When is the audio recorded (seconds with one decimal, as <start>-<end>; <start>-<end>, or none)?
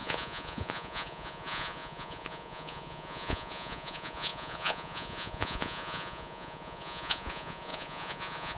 none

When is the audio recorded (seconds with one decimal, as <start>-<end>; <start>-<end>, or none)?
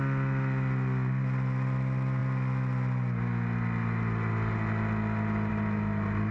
0.0-6.3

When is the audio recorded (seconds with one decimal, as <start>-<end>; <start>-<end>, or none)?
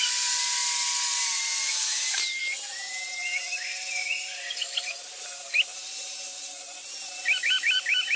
0.0-8.2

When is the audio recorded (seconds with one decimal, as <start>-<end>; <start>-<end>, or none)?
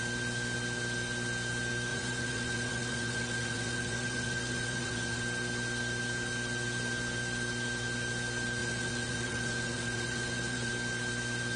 0.0-1.9; 5.2-8.6; 10.7-11.6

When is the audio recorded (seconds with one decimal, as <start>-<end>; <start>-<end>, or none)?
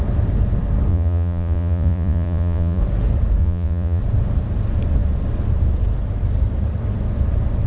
0.0-0.9; 2.8-3.4; 4.0-7.7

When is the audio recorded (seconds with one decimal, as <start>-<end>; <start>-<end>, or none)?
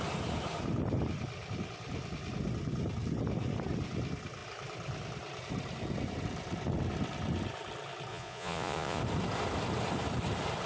0.0-8.1; 9.0-10.7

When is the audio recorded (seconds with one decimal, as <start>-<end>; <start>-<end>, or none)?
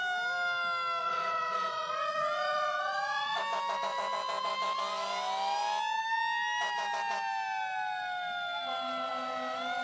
0.0-1.0; 3.4-9.8